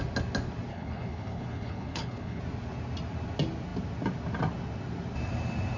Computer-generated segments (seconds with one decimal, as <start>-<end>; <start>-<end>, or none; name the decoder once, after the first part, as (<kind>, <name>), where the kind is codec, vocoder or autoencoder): 0.7-2.4 (codec, HILCodec)